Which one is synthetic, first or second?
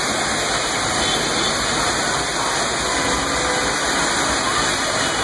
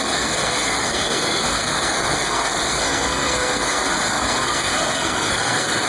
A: second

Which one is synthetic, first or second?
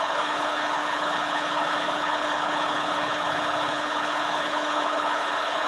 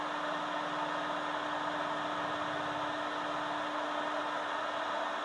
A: first